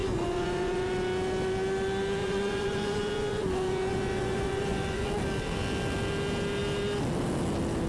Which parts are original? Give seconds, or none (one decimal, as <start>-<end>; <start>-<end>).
0.9-2.2; 5.1-7.9